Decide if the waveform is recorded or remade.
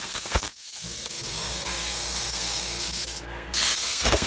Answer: remade